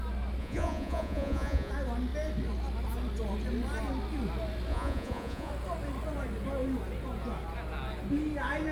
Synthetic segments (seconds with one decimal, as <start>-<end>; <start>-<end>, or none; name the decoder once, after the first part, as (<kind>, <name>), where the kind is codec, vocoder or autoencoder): 0.4-1.7 (vocoder, Vocos); 4.7-5.5